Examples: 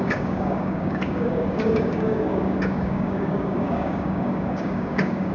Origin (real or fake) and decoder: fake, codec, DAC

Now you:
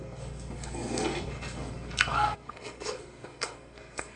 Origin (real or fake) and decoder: fake, codec, SNAC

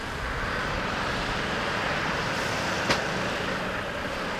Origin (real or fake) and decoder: real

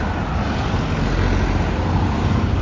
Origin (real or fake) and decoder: real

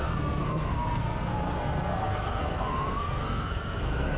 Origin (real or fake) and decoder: fake, codec, SNAC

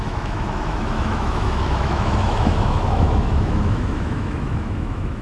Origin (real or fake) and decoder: fake, autoencoder, DAC-VAE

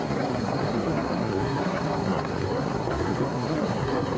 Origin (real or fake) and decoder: fake, codec, SNAC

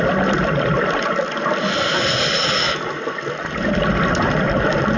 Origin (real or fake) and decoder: real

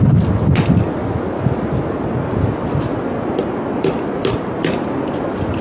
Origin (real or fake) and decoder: real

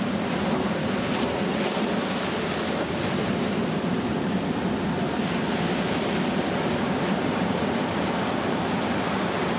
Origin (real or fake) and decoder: real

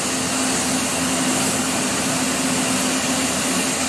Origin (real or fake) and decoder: real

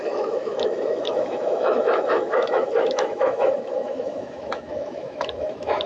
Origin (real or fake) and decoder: fake, autoencoder, DAC-VAE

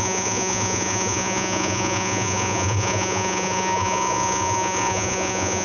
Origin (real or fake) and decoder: fake, vocoder, Vocos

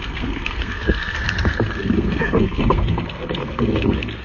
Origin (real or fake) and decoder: fake, codec, SNAC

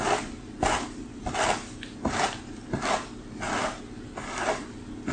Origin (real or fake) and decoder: real